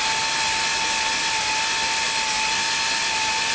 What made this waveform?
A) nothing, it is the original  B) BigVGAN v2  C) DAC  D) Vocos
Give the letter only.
A